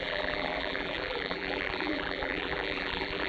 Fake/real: fake